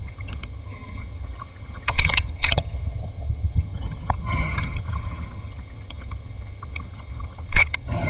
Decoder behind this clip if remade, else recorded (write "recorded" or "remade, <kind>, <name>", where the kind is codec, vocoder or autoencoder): remade, vocoder, HiFi-GAN